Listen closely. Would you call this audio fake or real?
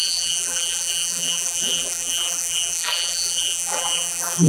fake